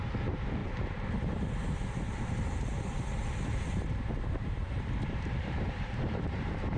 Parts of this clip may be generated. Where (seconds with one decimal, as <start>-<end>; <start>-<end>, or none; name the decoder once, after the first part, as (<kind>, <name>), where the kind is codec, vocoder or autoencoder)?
0.0-6.8 (vocoder, BigVGAN v2)